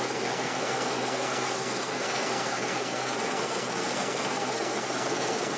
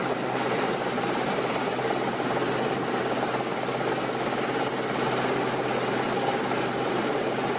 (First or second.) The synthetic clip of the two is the first